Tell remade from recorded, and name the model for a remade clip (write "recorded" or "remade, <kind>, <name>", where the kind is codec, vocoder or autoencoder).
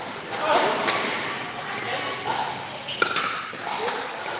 recorded